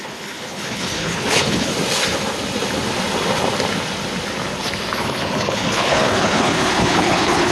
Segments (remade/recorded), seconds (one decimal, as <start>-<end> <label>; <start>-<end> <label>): 0.0-1.7 remade; 1.7-5.0 recorded; 5.0-7.5 remade